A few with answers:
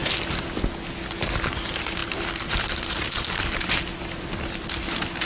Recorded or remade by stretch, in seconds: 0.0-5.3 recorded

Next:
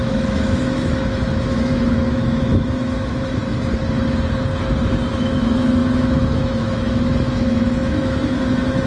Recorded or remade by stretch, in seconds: 0.0-3.4 remade; 3.4-5.1 recorded; 5.1-8.9 remade